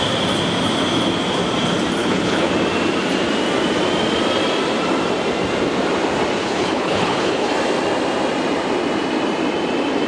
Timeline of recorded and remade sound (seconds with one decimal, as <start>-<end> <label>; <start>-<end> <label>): 0.0-2.0 recorded; 2.0-2.5 remade; 2.5-6.4 recorded; 6.4-7.5 remade; 7.5-10.1 recorded

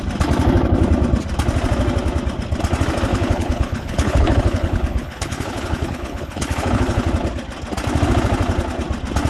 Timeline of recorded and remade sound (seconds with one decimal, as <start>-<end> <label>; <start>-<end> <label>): 0.0-3.1 recorded; 3.1-7.1 remade; 7.1-9.3 recorded